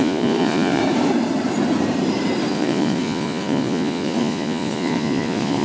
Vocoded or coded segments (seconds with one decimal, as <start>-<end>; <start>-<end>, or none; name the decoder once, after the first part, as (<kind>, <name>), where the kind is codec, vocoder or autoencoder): 0.0-0.8 (vocoder, Vocos); 2.5-5.6